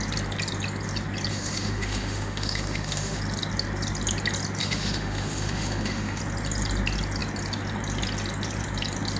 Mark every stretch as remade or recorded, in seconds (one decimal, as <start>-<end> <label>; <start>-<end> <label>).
0.0-1.3 recorded; 1.3-3.2 remade; 3.2-4.6 recorded; 4.6-6.2 remade; 6.2-9.2 recorded